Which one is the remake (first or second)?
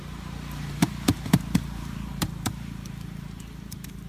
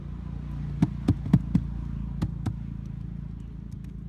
first